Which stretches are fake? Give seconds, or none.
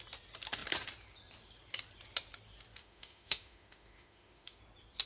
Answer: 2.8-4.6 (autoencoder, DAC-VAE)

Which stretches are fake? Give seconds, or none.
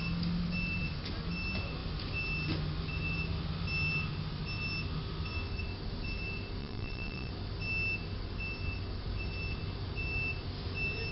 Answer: 6.6-7.3 (vocoder, WaveNeXt)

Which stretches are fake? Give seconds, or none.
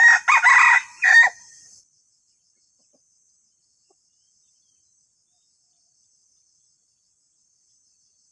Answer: 0.9-2.3 (vocoder, BigVGAN v2)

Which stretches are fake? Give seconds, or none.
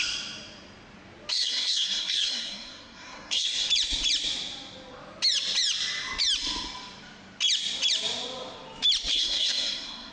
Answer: 1.3-3.7 (codec, SNAC); 9.1-10.1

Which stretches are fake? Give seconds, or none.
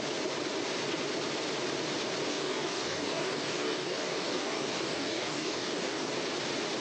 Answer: 2.3-6.1 (codec, DAC)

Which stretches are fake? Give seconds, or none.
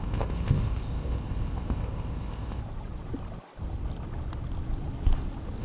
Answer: 0.0-2.6 (codec, ZipCodec)